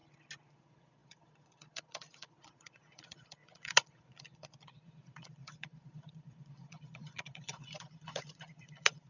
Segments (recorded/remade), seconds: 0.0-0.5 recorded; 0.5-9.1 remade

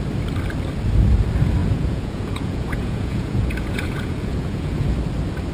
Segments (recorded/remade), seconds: 0.0-1.6 recorded; 1.6-4.9 remade; 4.9-5.5 recorded

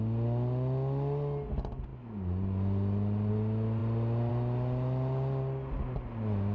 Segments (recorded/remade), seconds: 0.0-6.5 recorded

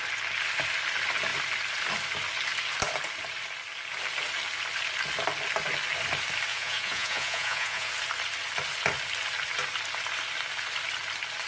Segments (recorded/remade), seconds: 0.0-6.5 recorded; 6.5-7.9 remade; 7.9-11.5 recorded

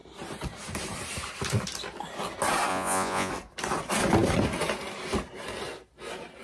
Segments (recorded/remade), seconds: 0.0-2.7 recorded; 2.7-3.3 remade; 3.3-6.4 recorded

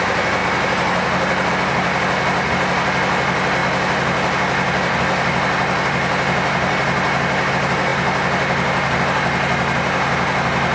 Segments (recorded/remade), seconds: 0.0-10.7 recorded